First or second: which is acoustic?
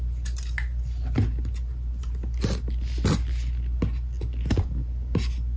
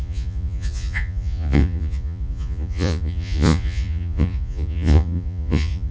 first